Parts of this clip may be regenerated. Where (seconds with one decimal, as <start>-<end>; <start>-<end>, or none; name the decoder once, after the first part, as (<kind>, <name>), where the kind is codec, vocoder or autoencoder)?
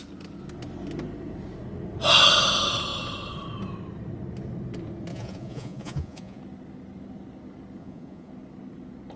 5.1-6.4 (vocoder, Vocos); 7.8-8.3